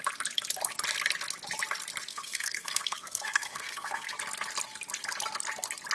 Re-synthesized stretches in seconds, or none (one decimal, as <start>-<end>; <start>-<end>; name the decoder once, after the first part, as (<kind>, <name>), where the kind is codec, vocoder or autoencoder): 2.1-4.1 (codec, SNAC)